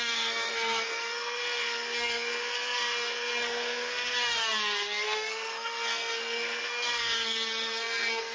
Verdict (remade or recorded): remade